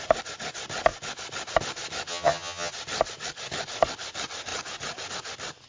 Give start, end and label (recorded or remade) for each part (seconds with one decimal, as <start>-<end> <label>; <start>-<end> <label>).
0.0-2.1 recorded; 2.1-2.7 remade; 2.7-5.7 recorded